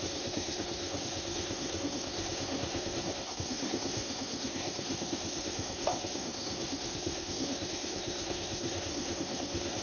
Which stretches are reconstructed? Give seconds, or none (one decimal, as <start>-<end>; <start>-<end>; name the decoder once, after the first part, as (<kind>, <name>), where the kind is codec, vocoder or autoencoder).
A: 0.0-9.8 (codec, SNAC)

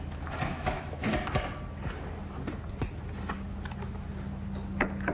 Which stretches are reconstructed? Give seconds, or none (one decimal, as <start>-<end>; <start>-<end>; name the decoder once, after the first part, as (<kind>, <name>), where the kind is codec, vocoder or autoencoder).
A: 0.5-1.1 (autoencoder, DAC-VAE)

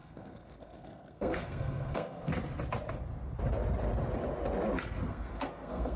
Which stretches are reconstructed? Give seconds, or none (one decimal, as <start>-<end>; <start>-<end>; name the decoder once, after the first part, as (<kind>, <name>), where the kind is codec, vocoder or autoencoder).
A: 0.0-2.3 (codec, SNAC); 5.1-6.0

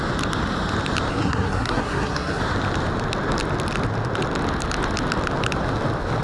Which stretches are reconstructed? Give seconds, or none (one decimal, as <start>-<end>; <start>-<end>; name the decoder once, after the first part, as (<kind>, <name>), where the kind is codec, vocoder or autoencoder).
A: 1.1-2.4 (codec, SNAC)

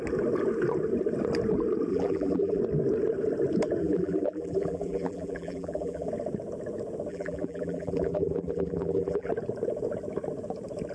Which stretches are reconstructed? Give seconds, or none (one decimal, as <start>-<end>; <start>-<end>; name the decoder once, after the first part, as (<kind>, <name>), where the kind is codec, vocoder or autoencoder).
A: 1.9-2.6 (vocoder, BigVGAN v2); 3.8-6.1; 7.1-9.3

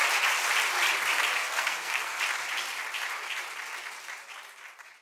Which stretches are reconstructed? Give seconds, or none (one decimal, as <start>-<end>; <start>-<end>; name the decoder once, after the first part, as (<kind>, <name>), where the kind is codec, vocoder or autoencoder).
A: 1.4-2.2 (codec, SNAC)

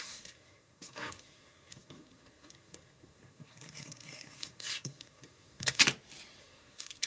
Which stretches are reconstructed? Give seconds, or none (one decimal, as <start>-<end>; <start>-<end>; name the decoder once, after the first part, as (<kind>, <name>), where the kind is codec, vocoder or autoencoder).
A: 0.0-5.8 (codec, SNAC); 6.4-7.1

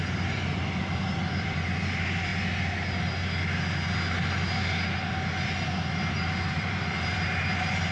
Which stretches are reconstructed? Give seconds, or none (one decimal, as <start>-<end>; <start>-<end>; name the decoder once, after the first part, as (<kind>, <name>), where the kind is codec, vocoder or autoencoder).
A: 0.0-2.3 (vocoder, BigVGAN v2); 6.1-7.9